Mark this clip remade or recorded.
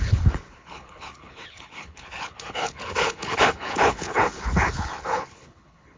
remade